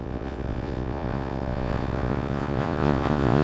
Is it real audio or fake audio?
fake